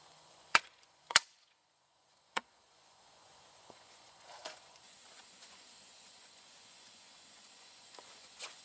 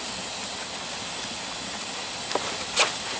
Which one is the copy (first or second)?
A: first